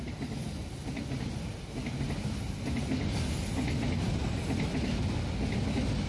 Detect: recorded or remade recorded